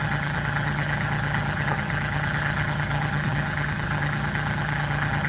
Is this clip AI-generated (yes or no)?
yes